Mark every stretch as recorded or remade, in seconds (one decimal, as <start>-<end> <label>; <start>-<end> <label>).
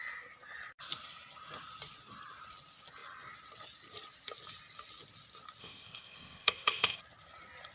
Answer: 0.0-5.6 recorded; 5.6-7.0 remade; 7.0-7.7 recorded